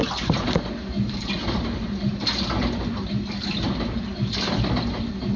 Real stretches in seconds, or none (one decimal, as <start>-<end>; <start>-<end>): 0.0-5.4